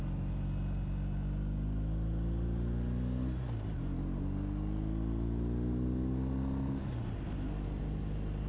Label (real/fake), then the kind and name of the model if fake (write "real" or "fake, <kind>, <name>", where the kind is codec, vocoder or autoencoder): real